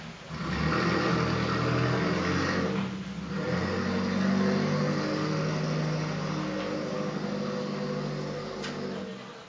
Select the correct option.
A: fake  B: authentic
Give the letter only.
B